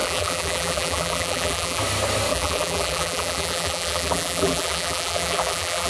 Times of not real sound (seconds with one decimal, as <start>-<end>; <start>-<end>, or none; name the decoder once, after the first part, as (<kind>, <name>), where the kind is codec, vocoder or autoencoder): 0.0-1.8 (vocoder, BigVGAN v2); 2.3-5.9